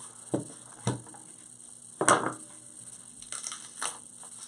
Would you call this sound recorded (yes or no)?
yes